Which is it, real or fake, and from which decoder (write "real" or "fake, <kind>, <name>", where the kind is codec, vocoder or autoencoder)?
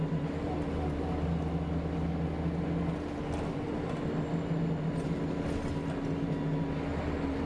real